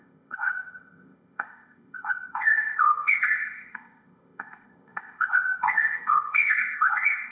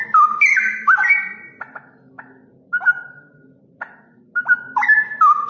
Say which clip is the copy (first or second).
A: first